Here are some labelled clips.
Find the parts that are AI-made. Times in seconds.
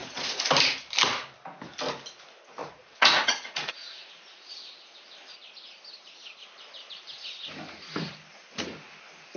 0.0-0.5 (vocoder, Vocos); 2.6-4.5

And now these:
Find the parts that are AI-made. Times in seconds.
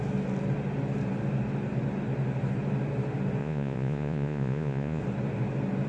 3.4-5.0 (vocoder, Vocos)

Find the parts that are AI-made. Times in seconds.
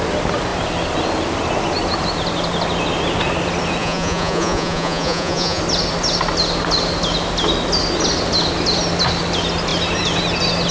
3.8-5.6 (vocoder, Vocos)